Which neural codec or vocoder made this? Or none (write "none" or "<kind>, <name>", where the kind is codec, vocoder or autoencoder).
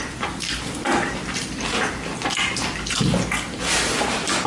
none